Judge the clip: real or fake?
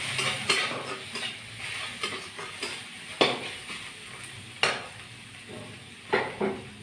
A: real